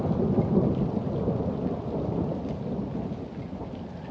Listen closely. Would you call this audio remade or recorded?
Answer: recorded